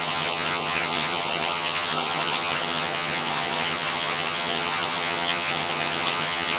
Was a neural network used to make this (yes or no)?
yes